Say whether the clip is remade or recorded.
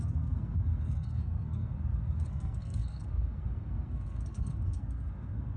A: remade